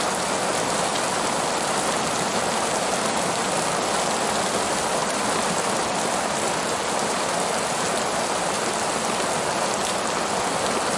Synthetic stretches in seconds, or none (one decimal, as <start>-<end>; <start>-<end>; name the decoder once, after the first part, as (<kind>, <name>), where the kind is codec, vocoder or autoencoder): 0.5-2.3 (vocoder, BigVGAN v2)